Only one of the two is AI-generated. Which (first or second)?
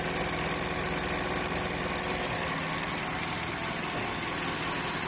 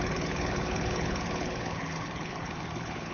second